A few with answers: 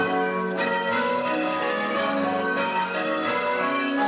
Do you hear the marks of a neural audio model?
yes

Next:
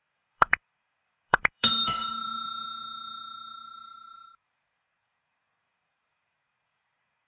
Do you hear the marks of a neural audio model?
yes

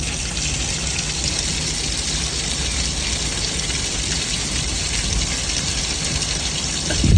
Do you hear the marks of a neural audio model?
no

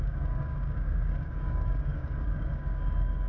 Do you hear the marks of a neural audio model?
yes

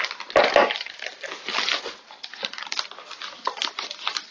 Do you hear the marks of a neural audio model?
no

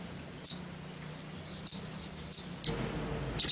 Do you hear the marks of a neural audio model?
no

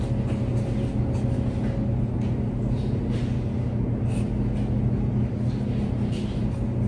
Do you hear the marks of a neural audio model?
no